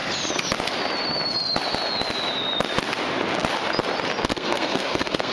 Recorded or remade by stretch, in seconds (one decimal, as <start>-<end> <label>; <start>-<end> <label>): 0.0-4.3 recorded; 4.3-5.3 remade